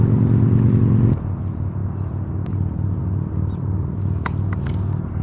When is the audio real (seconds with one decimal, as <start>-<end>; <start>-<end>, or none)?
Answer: 0.0-5.2